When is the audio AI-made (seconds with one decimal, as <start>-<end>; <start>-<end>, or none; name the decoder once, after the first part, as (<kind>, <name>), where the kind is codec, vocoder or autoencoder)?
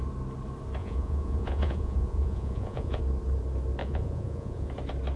0.8-3.0 (vocoder, Vocos); 3.8-4.7